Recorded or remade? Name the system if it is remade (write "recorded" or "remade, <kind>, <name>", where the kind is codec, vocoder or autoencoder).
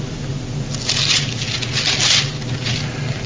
recorded